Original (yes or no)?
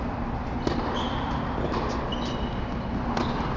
yes